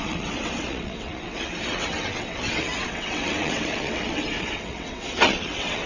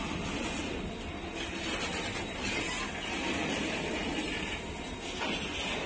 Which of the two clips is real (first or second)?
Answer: second